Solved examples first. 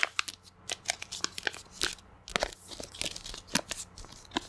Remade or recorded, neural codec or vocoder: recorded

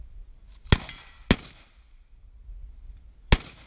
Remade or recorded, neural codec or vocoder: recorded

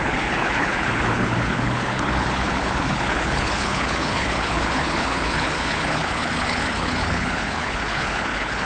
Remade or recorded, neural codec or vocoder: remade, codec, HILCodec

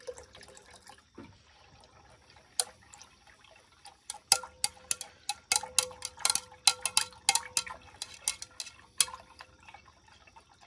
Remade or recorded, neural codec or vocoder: recorded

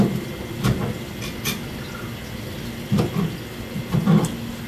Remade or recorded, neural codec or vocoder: recorded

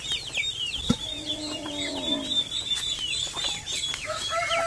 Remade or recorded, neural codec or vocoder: recorded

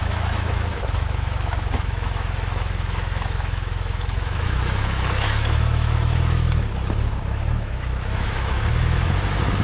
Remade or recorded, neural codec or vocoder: remade, autoencoder, DAC-VAE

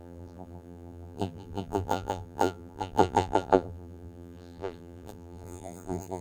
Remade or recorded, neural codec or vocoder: remade, vocoder, BigVGAN v2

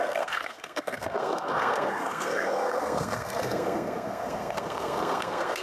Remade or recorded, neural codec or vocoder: remade, codec, SNAC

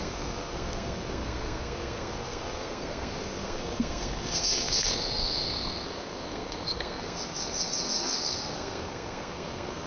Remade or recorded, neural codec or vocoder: remade, codec, SNAC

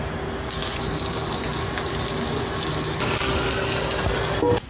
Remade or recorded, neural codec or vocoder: recorded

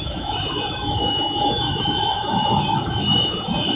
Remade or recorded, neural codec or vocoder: remade, autoencoder, DAC-VAE